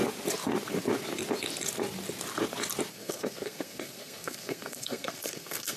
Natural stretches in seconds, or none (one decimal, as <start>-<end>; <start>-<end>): 0.0-2.9